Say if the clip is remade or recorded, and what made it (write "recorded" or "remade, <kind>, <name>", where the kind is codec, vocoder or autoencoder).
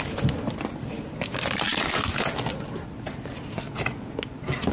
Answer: recorded